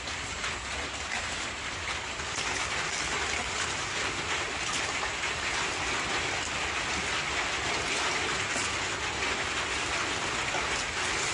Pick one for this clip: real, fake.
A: real